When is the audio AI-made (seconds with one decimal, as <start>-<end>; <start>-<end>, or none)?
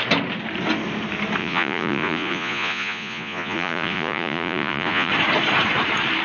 1.4-5.1